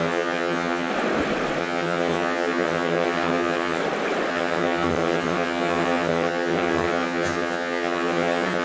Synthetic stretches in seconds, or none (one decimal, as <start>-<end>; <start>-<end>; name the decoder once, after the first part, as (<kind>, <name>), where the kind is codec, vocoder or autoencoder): 0.0-0.9 (vocoder, HiFi-GAN); 1.6-3.8; 4.3-8.6